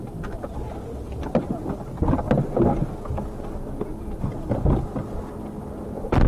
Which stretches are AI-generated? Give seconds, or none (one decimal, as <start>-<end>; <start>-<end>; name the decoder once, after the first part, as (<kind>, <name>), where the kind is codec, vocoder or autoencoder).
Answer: 0.0-0.5 (vocoder, BigVGAN v2); 4.0-6.3

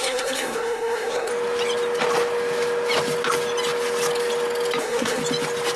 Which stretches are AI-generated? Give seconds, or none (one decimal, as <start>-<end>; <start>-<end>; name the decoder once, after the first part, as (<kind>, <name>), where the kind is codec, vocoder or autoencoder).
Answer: 0.0-1.3 (codec, SNAC); 4.8-5.2

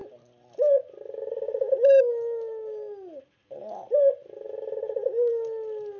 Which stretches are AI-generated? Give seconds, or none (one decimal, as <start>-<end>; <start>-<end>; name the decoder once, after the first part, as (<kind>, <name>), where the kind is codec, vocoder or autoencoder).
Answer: none

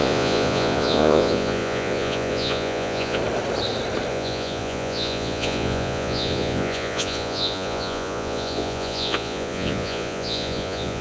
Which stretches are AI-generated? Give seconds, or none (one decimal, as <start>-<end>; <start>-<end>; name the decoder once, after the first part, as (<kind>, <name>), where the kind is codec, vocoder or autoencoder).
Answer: 0.0-3.2 (vocoder, Vocos); 4.1-11.0